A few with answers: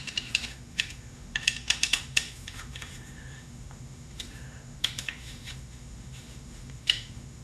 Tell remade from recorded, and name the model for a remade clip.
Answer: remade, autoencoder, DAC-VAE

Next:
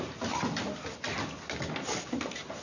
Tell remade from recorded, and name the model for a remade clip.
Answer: recorded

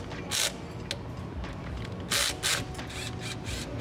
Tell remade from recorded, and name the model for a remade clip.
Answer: recorded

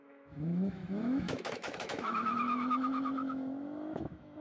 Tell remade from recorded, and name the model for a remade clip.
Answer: remade, autoencoder, DAC-VAE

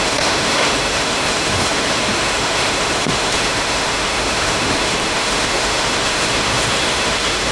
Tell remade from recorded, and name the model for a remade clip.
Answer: remade, autoencoder, DAC-VAE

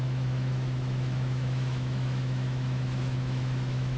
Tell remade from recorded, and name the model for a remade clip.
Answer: remade, autoencoder, DAC-VAE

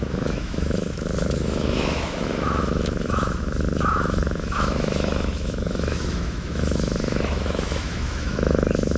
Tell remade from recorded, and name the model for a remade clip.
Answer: remade, autoencoder, DAC-VAE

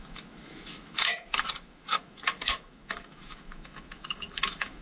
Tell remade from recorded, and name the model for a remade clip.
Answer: remade, autoencoder, DAC-VAE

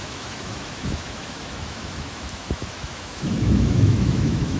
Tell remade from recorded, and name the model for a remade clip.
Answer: remade, autoencoder, DAC-VAE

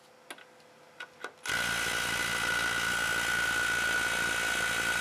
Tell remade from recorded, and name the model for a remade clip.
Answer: recorded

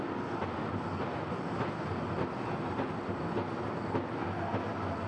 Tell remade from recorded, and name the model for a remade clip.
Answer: recorded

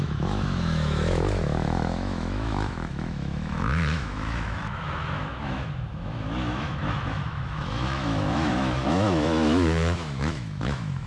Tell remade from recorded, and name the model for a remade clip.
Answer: remade, autoencoder, DAC-VAE